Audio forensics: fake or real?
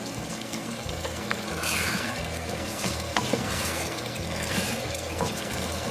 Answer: fake